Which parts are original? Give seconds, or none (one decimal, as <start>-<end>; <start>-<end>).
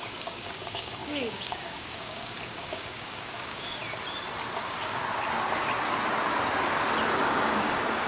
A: 3.8-4.6; 5.0-7.3